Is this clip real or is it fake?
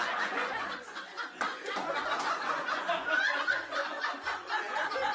fake